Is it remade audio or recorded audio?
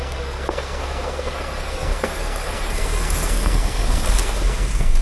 remade